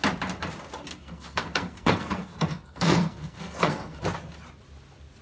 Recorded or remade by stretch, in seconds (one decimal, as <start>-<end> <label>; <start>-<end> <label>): 0.0-0.9 recorded; 0.9-4.0 remade; 4.0-5.2 recorded